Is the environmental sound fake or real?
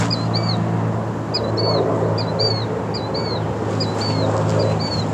real